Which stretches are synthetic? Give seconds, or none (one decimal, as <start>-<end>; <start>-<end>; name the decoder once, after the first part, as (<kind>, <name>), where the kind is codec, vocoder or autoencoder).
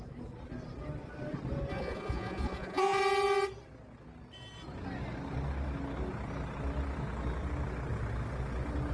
1.7-3.0 (vocoder, Vocos)